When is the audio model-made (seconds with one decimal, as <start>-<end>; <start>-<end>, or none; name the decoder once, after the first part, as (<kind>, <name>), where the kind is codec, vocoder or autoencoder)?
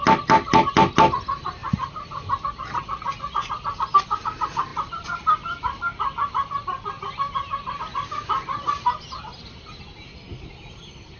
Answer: none